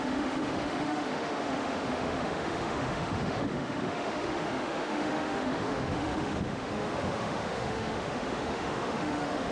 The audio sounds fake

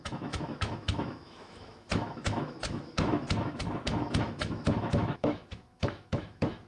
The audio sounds fake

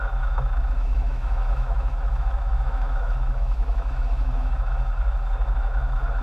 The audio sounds fake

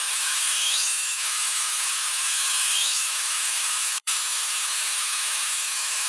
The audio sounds fake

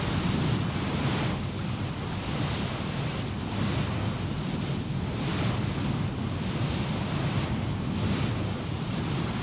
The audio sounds real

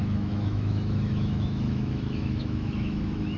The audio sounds fake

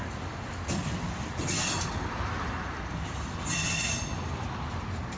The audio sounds real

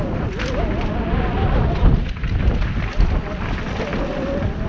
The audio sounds real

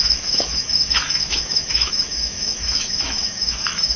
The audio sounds fake